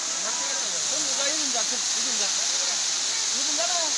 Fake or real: real